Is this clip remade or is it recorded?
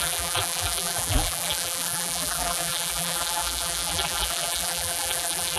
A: remade